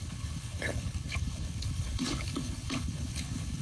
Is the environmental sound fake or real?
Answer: fake